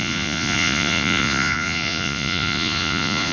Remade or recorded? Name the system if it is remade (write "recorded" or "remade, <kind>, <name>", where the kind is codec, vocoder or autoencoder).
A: remade, vocoder, Vocos